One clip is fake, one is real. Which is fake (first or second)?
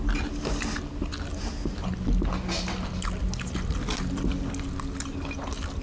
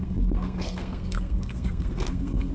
second